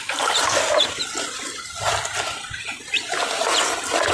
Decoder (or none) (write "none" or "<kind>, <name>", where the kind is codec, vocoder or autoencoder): none